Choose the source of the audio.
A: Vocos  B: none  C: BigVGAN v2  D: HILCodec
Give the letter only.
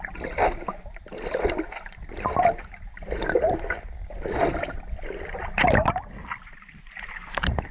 B